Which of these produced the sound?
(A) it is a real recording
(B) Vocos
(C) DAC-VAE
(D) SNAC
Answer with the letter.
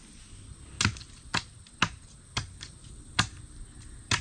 A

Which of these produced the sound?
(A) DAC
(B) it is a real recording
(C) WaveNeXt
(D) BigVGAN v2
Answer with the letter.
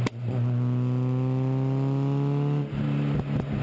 B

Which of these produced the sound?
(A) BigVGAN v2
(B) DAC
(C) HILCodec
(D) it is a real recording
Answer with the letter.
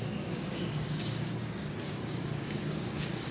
B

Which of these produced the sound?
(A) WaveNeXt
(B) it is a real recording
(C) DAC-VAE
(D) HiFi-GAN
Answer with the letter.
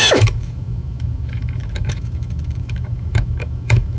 C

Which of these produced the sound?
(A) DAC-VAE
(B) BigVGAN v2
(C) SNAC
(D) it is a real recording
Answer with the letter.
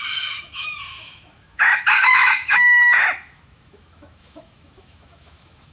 A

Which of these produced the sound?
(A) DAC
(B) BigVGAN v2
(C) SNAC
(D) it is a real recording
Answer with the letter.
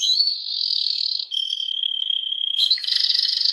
C